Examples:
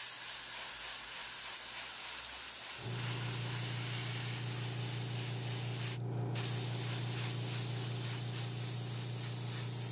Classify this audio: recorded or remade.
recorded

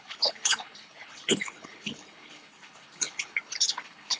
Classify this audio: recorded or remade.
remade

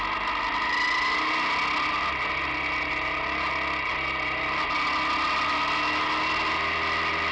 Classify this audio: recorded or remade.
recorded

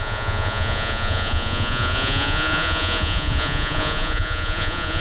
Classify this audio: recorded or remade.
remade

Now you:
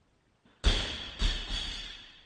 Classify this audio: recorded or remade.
recorded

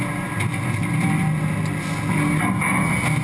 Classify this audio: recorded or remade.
recorded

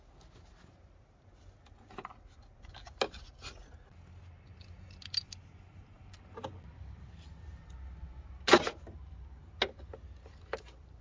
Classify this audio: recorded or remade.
recorded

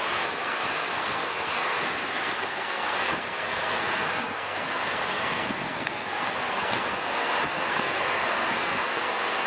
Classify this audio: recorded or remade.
remade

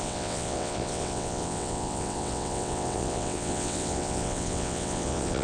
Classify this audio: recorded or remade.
remade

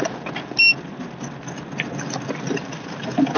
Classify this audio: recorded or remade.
recorded